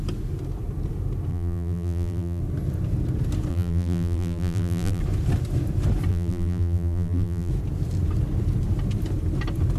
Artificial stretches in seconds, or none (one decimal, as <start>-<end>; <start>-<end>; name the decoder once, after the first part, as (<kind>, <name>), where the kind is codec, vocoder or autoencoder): 1.3-2.4 (vocoder, BigVGAN v2); 3.5-5.0; 6.1-7.5

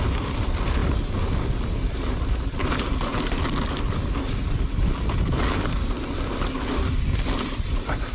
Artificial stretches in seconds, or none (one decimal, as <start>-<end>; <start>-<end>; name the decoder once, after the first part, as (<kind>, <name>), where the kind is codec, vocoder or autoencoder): none

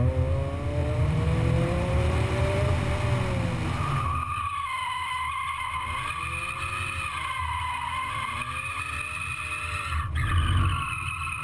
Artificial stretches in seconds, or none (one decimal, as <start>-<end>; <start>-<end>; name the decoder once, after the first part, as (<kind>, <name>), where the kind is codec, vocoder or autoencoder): 0.8-2.7 (vocoder, BigVGAN v2)